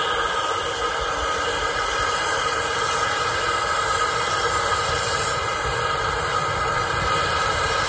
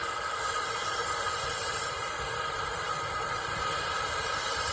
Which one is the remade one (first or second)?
second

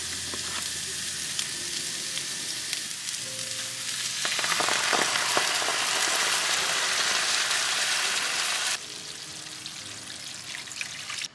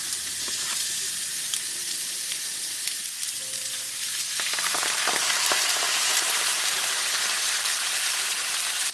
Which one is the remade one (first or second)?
second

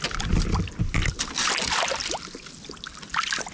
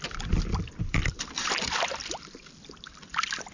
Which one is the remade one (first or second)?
second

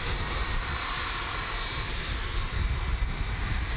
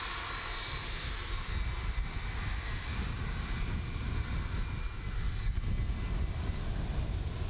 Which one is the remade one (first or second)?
first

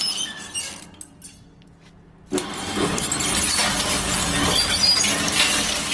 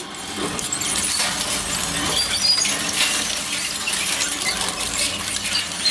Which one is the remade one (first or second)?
second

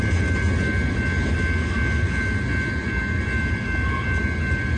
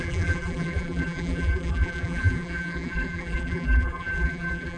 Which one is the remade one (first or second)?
second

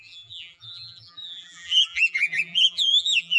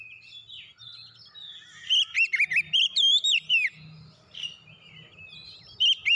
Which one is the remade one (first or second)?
first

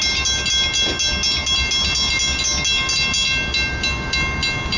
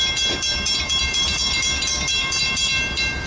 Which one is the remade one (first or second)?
second